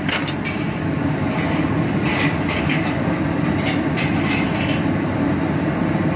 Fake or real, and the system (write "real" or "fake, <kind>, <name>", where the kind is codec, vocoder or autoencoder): real